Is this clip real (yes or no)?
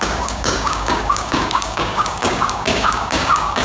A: no